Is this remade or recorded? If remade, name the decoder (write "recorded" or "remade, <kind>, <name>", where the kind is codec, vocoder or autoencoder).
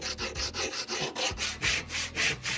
recorded